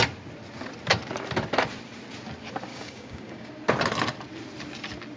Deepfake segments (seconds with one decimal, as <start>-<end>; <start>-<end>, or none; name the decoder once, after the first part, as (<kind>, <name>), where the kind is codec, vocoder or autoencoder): 2.7-3.5 (codec, DAC)